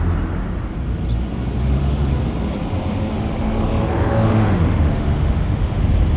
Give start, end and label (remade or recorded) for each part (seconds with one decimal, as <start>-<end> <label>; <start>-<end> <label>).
0.0-1.6 recorded; 1.6-2.1 remade; 2.1-3.1 recorded; 3.1-5.8 remade; 5.8-6.2 recorded